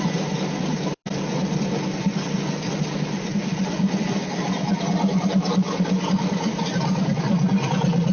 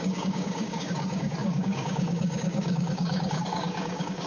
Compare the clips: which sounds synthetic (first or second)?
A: second